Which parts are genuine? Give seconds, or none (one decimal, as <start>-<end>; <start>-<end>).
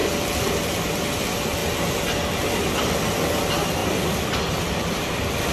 0.0-5.5